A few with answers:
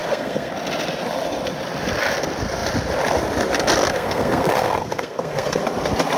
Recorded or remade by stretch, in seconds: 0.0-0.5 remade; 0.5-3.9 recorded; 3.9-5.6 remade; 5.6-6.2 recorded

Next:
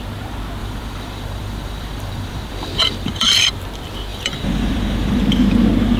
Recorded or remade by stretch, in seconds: 0.0-0.6 recorded; 0.6-3.5 remade; 3.5-4.1 recorded; 4.1-5.2 remade; 5.2-6.0 recorded

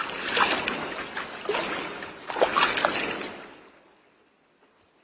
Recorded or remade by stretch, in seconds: 0.0-5.0 recorded

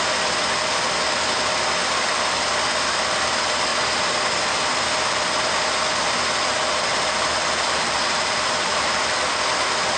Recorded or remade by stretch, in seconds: 0.0-6.9 recorded; 6.9-9.0 remade; 9.0-10.0 recorded

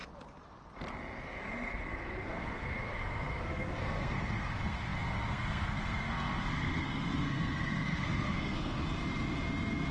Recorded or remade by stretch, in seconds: 0.0-1.4 recorded; 1.4-8.8 remade; 8.8-9.9 recorded

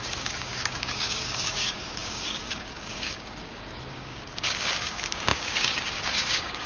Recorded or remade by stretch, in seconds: 0.0-6.7 remade